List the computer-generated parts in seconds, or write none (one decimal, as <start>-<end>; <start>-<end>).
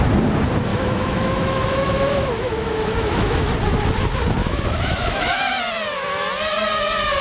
0.7-3.5; 4.4-5.6